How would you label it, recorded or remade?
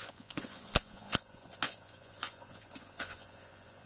remade